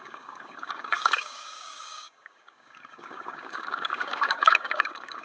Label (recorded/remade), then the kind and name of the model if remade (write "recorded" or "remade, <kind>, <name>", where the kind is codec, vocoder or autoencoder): remade, codec, DAC